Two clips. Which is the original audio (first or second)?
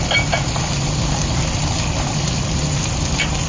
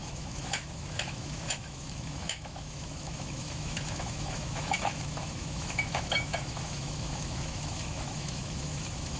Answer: first